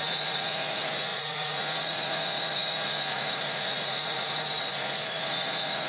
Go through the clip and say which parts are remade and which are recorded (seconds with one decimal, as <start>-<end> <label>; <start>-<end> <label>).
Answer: 0.0-5.9 remade